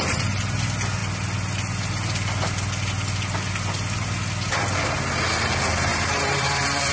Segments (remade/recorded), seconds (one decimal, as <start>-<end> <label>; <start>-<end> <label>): 0.0-5.9 recorded; 5.9-6.9 remade